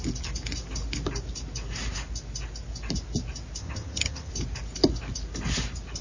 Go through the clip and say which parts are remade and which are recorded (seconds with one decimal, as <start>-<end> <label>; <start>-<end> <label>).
0.0-3.6 recorded; 3.6-4.3 remade; 4.3-6.0 recorded